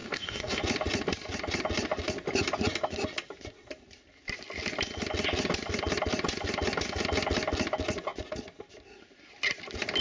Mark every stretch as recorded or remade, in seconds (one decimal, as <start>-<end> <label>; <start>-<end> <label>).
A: 0.0-0.6 remade; 0.6-10.0 recorded